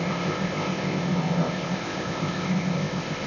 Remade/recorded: remade